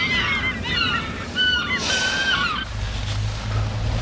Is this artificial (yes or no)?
no